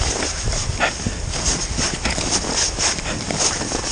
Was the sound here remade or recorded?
recorded